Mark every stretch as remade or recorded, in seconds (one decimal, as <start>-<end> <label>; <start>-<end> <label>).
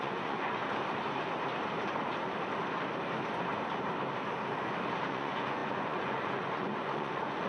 0.0-0.6 remade; 0.6-5.1 recorded; 5.1-7.5 remade